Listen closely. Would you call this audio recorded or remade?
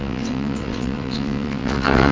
remade